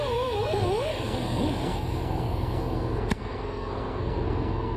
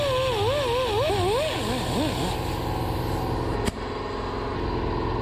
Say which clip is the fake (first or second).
first